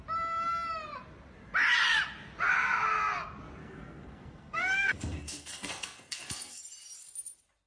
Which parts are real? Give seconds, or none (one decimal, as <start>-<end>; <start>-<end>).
0.0-3.6; 6.6-7.7